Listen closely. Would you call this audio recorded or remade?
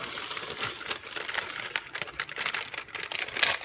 recorded